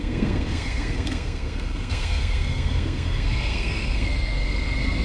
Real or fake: fake